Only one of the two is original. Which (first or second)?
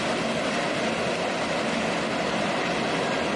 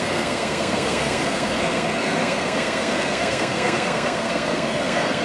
first